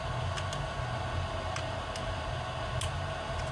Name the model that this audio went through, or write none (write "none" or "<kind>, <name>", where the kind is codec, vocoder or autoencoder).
none